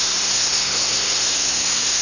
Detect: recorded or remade remade